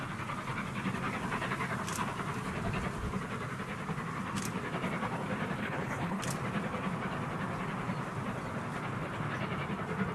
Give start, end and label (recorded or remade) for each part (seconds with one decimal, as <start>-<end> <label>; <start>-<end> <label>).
0.0-5.6 recorded; 5.6-6.2 remade; 6.2-10.1 recorded